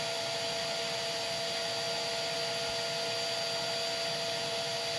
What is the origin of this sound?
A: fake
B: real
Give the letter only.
B